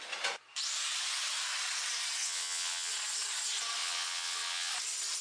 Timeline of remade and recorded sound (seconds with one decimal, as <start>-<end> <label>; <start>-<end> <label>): 0.0-2.2 recorded; 2.2-2.9 remade; 2.9-3.8 recorded; 3.8-4.7 remade; 4.7-5.2 recorded